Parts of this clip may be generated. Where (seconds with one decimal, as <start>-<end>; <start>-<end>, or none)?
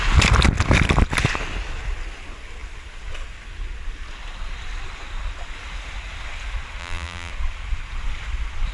6.8-7.3